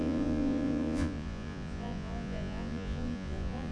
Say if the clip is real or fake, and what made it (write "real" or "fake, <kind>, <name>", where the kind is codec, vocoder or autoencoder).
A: fake, vocoder, Vocos